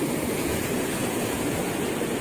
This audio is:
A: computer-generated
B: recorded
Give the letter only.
A